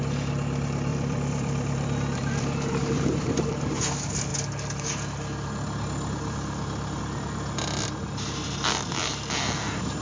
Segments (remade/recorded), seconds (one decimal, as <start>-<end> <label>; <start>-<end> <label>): 0.0-0.9 recorded; 0.9-3.9 remade; 3.9-10.0 recorded